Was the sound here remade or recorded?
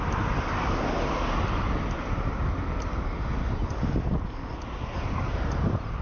recorded